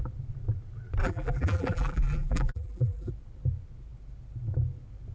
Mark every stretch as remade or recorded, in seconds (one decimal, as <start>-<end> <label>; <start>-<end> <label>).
0.0-1.0 recorded; 1.0-3.1 remade; 3.1-5.1 recorded

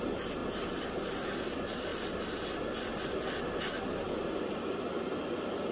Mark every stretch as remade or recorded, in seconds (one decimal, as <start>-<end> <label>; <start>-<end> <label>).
0.0-0.4 remade; 0.4-0.9 recorded; 0.9-1.9 remade; 1.9-2.5 recorded; 2.5-2.9 remade; 2.9-3.7 recorded; 3.7-5.7 remade

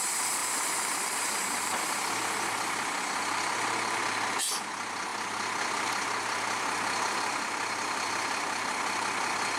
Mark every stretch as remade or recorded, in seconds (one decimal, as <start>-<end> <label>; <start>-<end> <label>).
0.0-0.4 recorded; 0.4-2.1 remade; 2.1-9.6 recorded

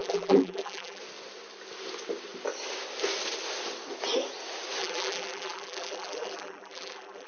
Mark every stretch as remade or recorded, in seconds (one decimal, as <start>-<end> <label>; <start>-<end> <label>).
0.0-1.0 remade; 1.0-4.8 recorded; 4.8-7.3 remade

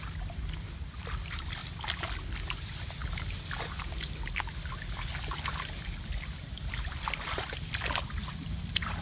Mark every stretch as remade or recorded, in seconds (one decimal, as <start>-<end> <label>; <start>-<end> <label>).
0.0-1.6 remade; 1.6-2.3 recorded; 2.3-3.0 remade; 3.0-8.3 recorded; 8.3-9.0 remade

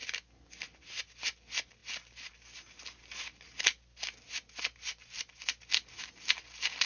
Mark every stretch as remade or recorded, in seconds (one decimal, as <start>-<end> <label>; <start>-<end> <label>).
0.0-6.9 recorded